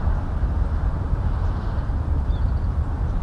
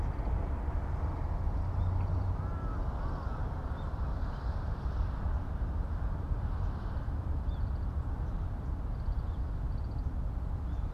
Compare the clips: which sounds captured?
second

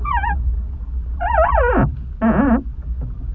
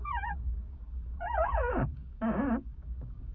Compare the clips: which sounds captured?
first